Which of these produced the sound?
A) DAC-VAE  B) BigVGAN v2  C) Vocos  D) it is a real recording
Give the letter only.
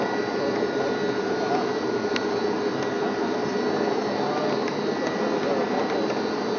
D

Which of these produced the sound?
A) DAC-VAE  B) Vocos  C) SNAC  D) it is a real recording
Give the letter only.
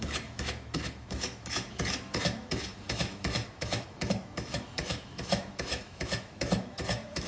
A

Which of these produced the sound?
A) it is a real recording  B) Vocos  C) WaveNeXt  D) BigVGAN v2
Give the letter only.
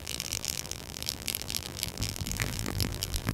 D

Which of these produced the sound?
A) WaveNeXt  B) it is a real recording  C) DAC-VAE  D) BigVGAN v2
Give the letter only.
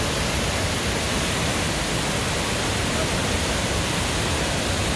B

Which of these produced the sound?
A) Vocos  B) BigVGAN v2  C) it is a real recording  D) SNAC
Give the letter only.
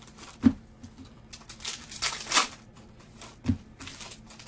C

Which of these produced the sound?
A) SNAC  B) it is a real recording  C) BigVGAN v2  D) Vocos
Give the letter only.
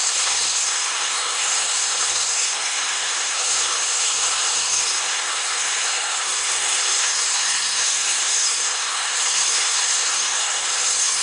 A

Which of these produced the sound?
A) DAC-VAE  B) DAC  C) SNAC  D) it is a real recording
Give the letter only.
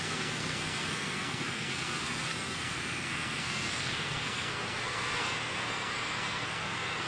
C